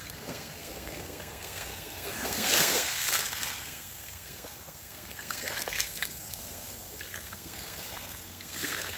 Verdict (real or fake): fake